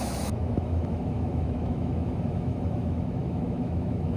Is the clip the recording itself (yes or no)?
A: no